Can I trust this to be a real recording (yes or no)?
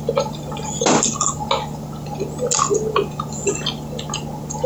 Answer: yes